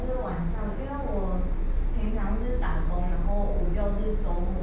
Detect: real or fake real